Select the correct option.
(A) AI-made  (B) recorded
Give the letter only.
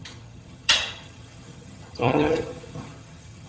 A